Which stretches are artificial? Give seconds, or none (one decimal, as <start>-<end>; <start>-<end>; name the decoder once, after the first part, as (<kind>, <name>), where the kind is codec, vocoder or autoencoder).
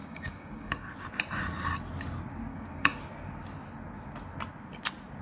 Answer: 0.0-0.9 (codec, DAC); 2.5-3.1